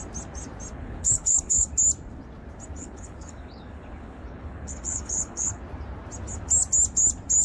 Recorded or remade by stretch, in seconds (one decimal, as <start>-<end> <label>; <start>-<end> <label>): 0.0-0.7 recorded; 0.7-1.7 remade; 1.7-2.8 recorded; 2.8-5.6 remade; 5.6-7.4 recorded